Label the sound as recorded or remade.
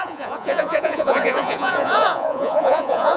remade